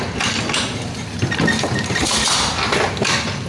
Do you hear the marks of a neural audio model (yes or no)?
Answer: no